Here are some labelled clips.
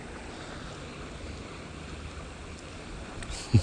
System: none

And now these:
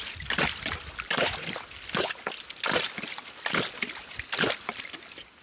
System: none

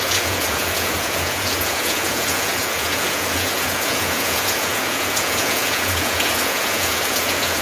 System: vocoder, Vocos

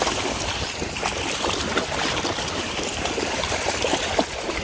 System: none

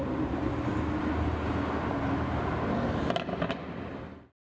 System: none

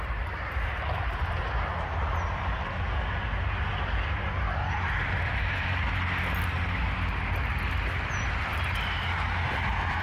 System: none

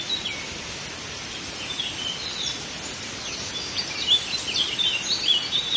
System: none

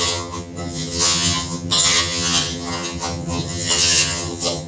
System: vocoder, HiFi-GAN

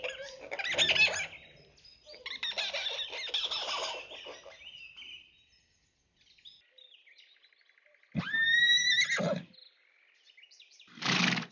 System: none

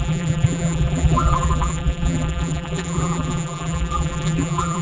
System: vocoder, BigVGAN v2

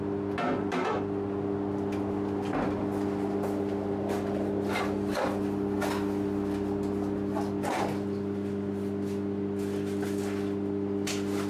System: none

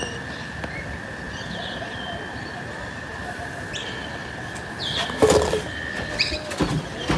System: vocoder, BigVGAN v2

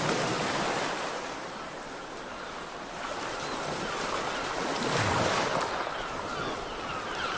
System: none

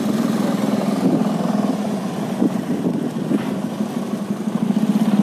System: none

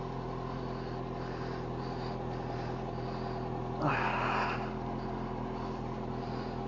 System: none